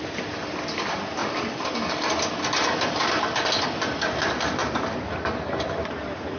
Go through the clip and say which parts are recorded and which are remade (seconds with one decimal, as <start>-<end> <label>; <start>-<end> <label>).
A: 0.0-1.2 recorded; 1.2-2.4 remade; 2.4-4.6 recorded; 4.6-5.7 remade; 5.7-6.4 recorded